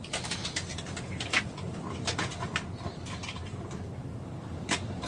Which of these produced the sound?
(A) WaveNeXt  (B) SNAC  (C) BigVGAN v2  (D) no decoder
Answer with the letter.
D